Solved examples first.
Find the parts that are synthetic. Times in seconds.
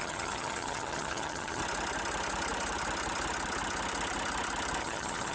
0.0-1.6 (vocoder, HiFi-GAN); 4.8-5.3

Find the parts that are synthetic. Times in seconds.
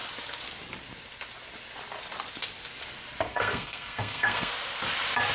3.3-4.5 (codec, SNAC)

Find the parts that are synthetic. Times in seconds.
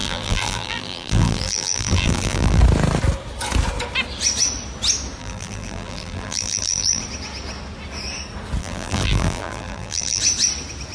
0.0-2.6 (vocoder, BigVGAN v2); 5.2-7.0; 8.6-10.2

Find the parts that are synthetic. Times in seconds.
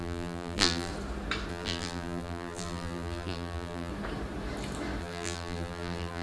0.0-0.9 (vocoder, BigVGAN v2); 1.5-3.9; 5.0-6.2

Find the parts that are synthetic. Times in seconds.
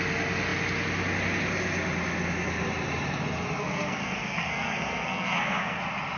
3.6-5.8 (codec, SNAC)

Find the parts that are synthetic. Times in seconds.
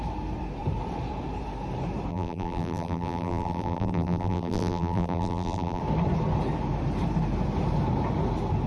2.1-5.8 (vocoder, BigVGAN v2)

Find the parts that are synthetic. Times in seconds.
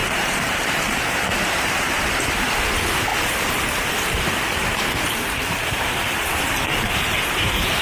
0.0-7.8 (vocoder, BigVGAN v2)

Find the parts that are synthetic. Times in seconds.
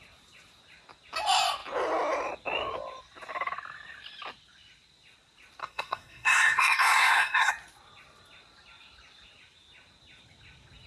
5.6-7.5 (codec, SNAC)